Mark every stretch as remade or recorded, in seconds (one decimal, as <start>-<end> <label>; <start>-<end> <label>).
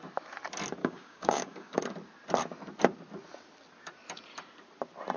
0.0-0.8 recorded; 0.8-1.8 remade; 1.8-5.2 recorded